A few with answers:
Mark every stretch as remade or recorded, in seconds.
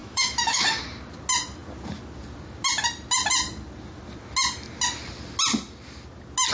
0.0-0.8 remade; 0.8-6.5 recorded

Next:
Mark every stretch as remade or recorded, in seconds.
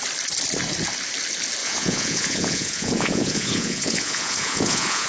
0.0-1.6 recorded; 1.6-5.1 remade